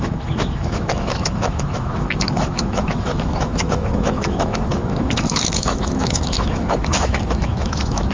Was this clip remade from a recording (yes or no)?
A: yes